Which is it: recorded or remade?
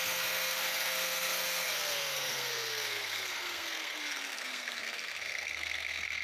remade